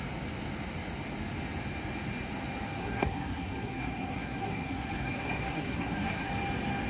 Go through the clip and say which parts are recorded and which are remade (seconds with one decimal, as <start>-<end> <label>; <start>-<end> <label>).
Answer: 0.0-2.8 recorded; 2.8-6.3 remade; 6.3-6.9 recorded